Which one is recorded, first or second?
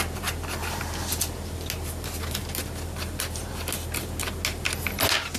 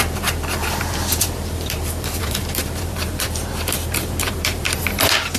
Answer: first